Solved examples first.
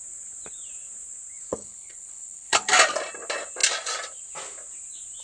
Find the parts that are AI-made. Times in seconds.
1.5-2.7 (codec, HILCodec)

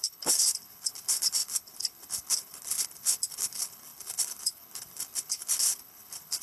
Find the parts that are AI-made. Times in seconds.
0.0-6.4 (codec, HILCodec)

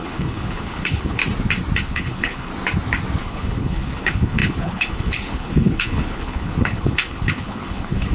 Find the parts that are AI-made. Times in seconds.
0.0-1.2 (codec, HILCodec); 1.8-2.5; 3.2-8.1

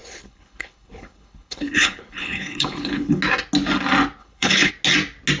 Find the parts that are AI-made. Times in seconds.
0.0-3.2 (codec, HILCodec); 4.2-4.7

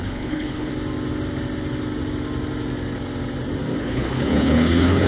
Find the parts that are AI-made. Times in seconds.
0.0-0.7 (codec, HILCodec); 3.8-5.1

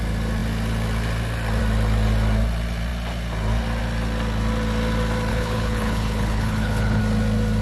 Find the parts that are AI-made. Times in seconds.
5.3-7.0 (codec, HILCodec)

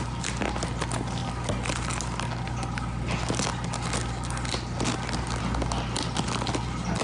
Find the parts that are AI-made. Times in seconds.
none

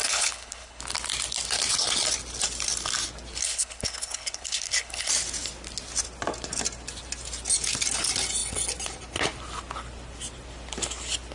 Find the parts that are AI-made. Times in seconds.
0.0-0.8 (codec, HILCodec); 3.4-5.1